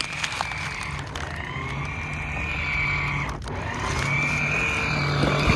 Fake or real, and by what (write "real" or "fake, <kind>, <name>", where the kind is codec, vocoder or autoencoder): real